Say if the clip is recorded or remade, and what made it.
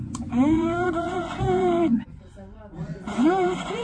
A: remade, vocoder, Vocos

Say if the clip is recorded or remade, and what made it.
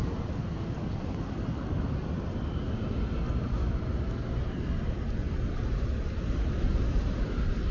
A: recorded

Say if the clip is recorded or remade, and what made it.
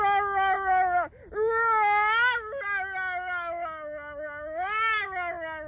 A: recorded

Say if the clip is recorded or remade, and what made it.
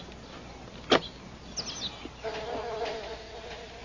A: recorded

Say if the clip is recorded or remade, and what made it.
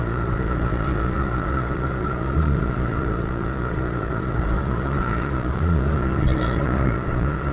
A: remade, vocoder, Vocos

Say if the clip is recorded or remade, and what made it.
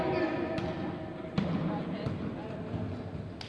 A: recorded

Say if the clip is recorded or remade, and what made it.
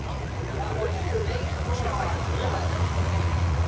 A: remade, vocoder, Vocos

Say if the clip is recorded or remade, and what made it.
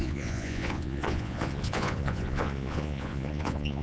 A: remade, vocoder, Vocos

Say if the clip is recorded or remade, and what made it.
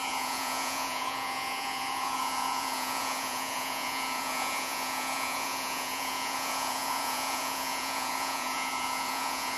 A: remade, vocoder, Vocos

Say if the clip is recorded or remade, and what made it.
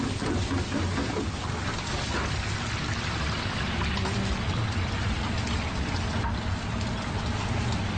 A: recorded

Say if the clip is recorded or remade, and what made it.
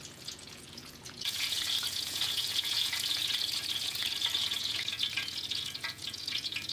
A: remade, vocoder, Vocos